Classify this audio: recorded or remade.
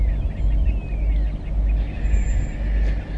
recorded